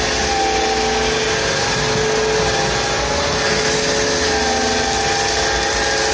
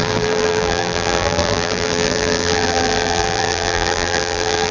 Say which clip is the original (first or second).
first